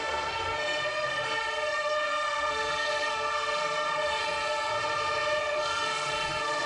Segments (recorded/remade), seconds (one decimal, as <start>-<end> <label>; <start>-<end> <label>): 0.0-4.7 remade; 4.7-5.4 recorded; 5.4-6.7 remade